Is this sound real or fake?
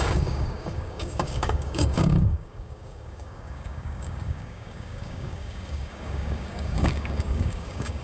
fake